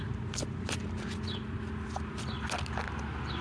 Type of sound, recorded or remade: recorded